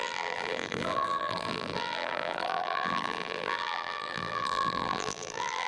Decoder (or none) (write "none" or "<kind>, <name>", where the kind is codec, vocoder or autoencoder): vocoder, BigVGAN v2